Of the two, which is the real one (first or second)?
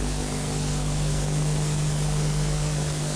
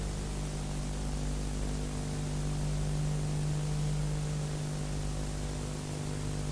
second